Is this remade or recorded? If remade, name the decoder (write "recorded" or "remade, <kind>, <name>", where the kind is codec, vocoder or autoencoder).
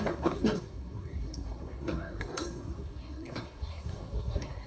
remade, codec, SNAC